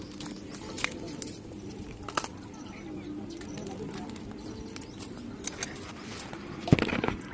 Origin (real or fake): real